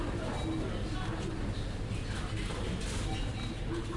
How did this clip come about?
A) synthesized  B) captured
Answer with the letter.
B